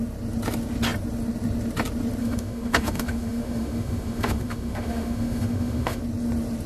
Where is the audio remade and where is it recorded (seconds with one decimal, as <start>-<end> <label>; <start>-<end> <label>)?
0.0-2.2 recorded; 2.2-6.0 remade; 6.0-6.7 recorded